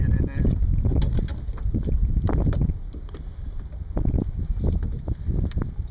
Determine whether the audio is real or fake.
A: real